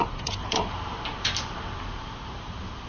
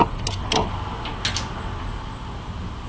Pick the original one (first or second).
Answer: second